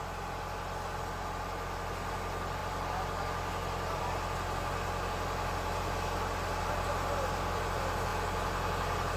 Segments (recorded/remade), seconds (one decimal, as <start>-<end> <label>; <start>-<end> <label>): 0.0-9.2 recorded